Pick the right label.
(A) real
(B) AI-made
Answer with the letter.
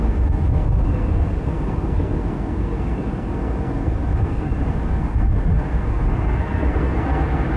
B